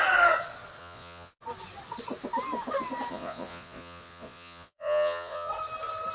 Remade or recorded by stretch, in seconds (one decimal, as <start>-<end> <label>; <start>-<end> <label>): 0.0-0.8 recorded; 0.8-1.3 remade; 1.3-3.1 recorded; 3.1-5.5 remade; 5.5-6.1 recorded